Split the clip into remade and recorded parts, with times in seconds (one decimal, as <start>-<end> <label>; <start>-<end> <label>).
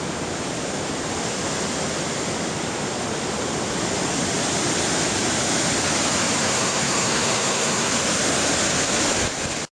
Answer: 0.0-6.4 recorded; 6.4-7.9 remade; 7.9-9.7 recorded